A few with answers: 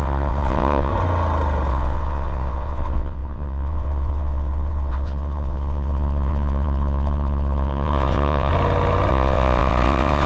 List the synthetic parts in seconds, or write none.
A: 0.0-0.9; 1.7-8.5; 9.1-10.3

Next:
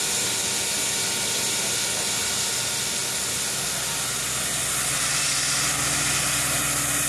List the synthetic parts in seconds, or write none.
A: none

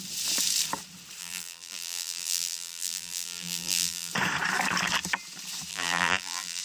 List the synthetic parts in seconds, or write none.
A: 1.2-4.1; 5.7-6.6

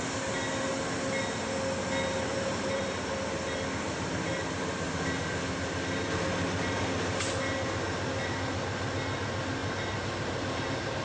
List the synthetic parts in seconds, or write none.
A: 2.3-3.1; 9.6-10.6

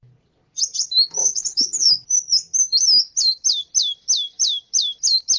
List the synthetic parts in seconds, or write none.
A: 1.2-1.9

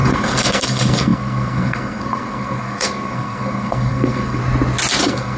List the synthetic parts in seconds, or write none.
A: 0.0-4.4; 5.0-5.4

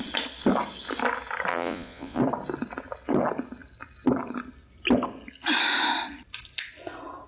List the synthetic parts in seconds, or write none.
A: 1.5-2.2